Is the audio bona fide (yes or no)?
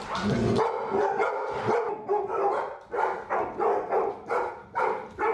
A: yes